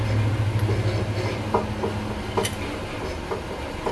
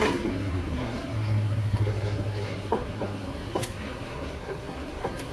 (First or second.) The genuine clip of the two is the first